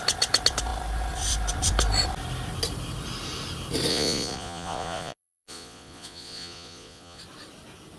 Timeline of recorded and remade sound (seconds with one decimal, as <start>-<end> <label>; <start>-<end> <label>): 0.0-3.9 recorded; 3.9-7.2 remade; 7.2-8.0 recorded